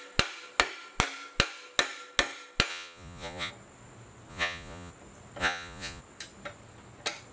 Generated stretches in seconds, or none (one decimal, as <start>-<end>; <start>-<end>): 2.7-3.5; 4.3-4.9; 5.4-6.0